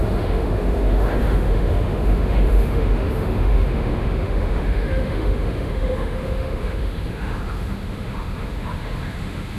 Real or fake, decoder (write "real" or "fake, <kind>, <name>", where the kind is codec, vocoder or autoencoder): fake, autoencoder, DAC-VAE